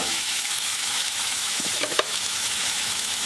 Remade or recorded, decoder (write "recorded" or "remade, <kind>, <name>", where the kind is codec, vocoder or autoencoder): remade, autoencoder, DAC-VAE